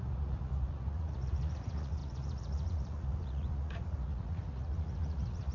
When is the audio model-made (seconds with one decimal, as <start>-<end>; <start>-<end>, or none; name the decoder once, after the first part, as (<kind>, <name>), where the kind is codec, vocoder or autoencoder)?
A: 0.0-5.5 (vocoder, Vocos)